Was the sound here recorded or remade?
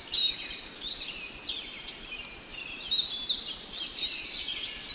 remade